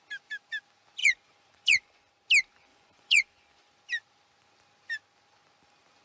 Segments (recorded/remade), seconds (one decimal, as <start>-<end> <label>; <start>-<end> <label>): 0.0-1.0 recorded; 1.0-2.1 remade; 2.1-2.7 recorded; 2.7-3.7 remade; 3.7-6.0 recorded